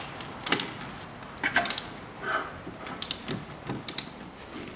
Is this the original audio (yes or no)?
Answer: yes